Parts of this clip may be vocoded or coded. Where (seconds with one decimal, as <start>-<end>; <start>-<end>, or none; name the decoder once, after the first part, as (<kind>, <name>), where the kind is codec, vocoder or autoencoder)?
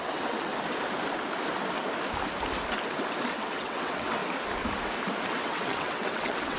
0.0-0.5 (vocoder, WaveNeXt); 3.3-4.2; 5.3-6.6